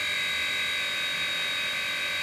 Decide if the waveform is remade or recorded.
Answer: recorded